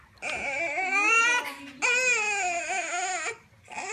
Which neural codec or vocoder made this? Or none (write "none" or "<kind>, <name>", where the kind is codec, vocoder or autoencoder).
none